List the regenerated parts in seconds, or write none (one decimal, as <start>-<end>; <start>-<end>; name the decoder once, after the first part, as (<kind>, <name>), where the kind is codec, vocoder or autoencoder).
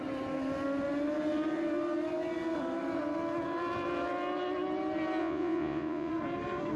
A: 5.2-6.1 (vocoder, Vocos)